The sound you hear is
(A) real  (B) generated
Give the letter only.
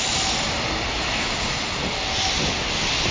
A